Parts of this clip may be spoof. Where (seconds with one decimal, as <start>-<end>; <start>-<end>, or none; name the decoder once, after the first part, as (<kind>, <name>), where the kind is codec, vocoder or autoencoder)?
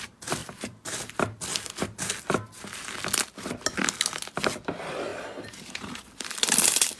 0.4-1.0 (vocoder, BigVGAN v2); 5.1-7.0